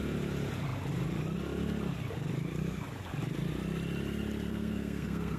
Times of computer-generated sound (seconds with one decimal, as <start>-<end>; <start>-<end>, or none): 4.5-5.4